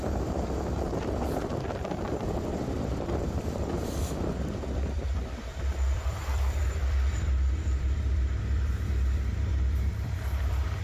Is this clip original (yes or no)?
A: no